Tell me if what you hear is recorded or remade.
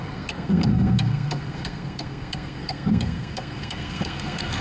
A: remade